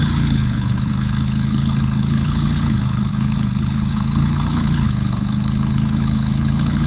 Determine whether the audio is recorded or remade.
remade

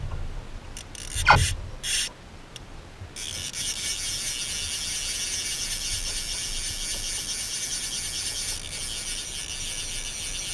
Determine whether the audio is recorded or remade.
recorded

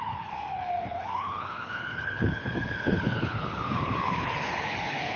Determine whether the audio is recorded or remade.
remade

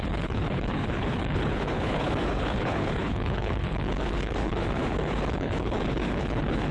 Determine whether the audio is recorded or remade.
remade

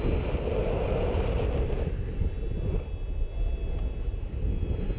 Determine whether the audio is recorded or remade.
recorded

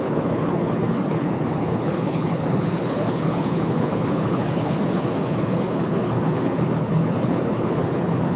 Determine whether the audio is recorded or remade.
remade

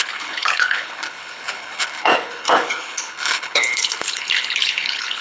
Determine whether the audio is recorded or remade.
remade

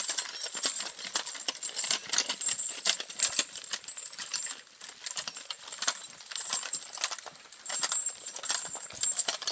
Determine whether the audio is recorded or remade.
recorded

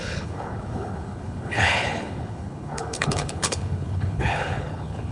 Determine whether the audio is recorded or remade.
remade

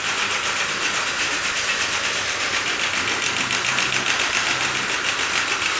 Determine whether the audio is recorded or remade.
recorded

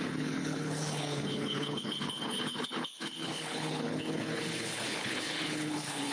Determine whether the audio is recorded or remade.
remade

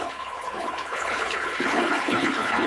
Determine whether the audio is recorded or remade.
remade